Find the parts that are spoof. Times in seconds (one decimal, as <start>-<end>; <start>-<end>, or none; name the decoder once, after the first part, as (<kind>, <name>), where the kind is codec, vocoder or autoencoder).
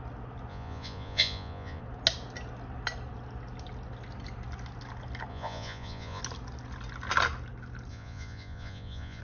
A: 0.5-1.8 (vocoder, Vocos); 5.3-6.2; 7.9-9.2